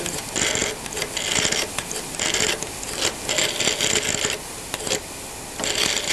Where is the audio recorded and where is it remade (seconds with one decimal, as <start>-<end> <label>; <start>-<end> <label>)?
0.0-6.1 recorded